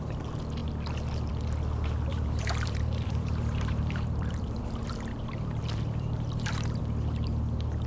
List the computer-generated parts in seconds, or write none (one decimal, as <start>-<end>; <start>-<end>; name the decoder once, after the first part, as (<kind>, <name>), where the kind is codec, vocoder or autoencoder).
2.1-6.8 (vocoder, BigVGAN v2)